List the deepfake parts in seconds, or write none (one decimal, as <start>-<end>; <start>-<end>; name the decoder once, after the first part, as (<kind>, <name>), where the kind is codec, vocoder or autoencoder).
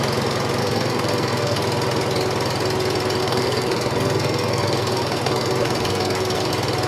0.6-1.6 (codec, SNAC); 3.2-6.5